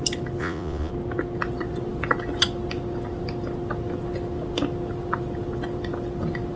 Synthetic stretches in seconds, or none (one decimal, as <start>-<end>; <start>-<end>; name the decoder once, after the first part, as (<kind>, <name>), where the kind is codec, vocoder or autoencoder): 0.4-0.9 (vocoder, Vocos)